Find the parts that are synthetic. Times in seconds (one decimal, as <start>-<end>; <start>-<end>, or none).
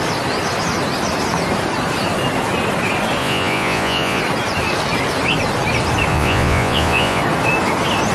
3.2-4.2; 6.1-7.2